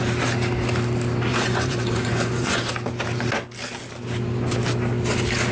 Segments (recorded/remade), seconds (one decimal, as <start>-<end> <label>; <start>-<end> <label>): 0.0-1.3 recorded; 1.3-2.6 remade; 2.6-5.5 recorded

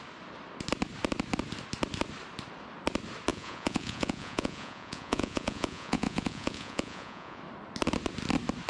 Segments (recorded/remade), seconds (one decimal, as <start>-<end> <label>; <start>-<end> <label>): 0.0-3.3 recorded; 3.3-7.4 remade; 7.4-8.7 recorded